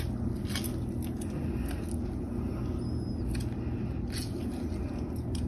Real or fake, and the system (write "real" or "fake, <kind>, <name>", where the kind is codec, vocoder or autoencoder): real